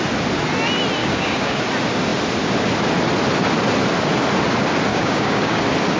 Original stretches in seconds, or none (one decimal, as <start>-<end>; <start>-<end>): 0.0-1.0; 1.6-4.9; 5.6-6.0